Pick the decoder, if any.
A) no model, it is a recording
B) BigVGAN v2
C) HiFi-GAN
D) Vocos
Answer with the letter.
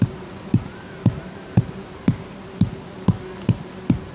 A